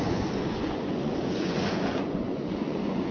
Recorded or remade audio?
remade